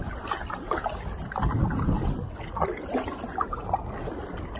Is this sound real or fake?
real